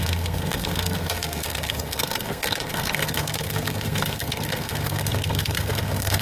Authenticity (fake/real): fake